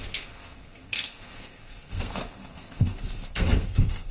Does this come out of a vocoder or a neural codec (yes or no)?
yes